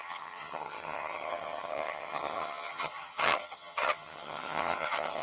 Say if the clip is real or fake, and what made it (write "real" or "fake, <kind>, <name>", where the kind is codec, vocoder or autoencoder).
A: fake, vocoder, HiFi-GAN